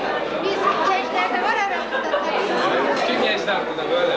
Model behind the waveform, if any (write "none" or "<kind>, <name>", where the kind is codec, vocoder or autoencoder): none